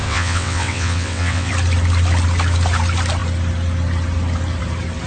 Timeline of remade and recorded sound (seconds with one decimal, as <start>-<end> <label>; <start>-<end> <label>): 0.0-1.5 remade; 1.5-5.1 recorded